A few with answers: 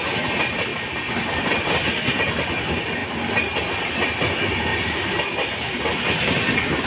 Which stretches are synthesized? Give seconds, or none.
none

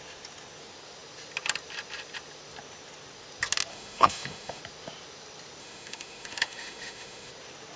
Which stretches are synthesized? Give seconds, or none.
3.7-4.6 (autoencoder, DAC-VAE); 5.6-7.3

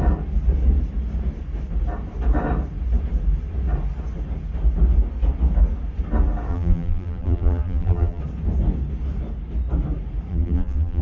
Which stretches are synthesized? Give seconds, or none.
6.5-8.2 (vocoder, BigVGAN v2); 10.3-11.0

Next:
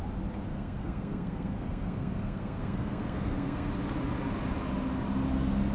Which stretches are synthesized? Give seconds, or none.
0.5-3.7 (codec, SNAC)